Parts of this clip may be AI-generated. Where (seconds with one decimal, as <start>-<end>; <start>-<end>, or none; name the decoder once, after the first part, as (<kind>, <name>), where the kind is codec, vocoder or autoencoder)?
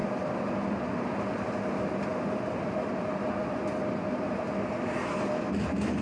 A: none